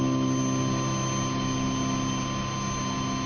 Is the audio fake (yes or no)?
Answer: no